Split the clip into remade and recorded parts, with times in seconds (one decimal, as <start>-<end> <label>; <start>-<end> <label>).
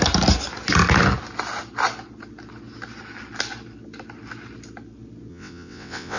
0.0-5.3 recorded; 5.3-6.2 remade